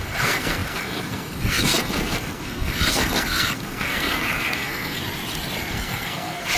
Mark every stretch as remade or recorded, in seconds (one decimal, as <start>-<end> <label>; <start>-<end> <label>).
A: 0.0-5.0 remade; 5.0-5.7 recorded; 5.7-6.6 remade